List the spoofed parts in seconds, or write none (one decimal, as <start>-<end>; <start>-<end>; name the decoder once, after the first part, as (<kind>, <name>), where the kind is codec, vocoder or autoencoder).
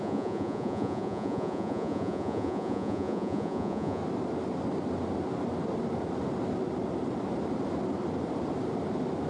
0.0-4.0 (vocoder, Vocos)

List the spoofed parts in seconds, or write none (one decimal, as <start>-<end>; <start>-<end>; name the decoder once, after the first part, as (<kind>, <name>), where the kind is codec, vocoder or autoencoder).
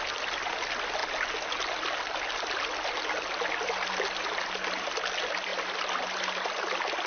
none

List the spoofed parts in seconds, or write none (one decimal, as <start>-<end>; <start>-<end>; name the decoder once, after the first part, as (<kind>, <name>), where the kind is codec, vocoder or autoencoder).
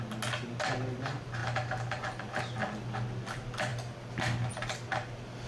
none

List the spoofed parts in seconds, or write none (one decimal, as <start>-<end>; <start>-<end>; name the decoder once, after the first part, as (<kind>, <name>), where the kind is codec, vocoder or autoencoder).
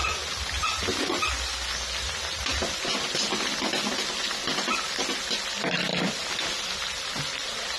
none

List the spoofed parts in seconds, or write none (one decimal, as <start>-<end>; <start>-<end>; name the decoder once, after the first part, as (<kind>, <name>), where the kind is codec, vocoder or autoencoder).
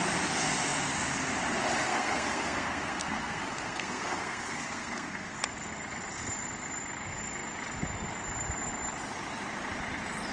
1.8-5.4 (codec, SNAC)